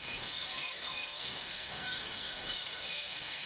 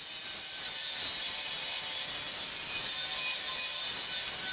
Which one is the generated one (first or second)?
first